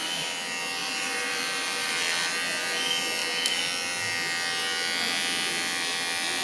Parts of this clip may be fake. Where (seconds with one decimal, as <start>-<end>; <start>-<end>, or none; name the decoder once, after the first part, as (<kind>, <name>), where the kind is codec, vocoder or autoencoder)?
0.8-1.9 (vocoder, BigVGAN v2)

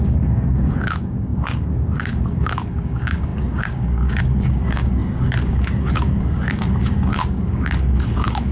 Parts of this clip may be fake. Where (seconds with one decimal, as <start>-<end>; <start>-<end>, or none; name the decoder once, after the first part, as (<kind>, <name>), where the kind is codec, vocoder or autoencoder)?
0.0-8.5 (codec, DAC)

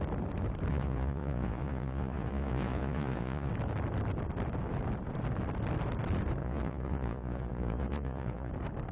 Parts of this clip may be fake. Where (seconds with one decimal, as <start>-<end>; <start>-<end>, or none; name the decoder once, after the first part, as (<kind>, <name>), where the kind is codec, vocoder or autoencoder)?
0.7-3.5 (vocoder, Vocos); 6.4-8.5